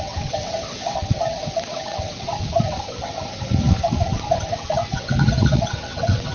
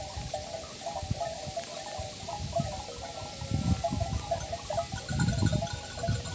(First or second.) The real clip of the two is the second